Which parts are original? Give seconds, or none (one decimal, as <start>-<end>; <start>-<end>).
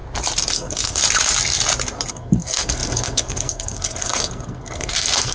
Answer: 0.0-0.5; 1.0-2.1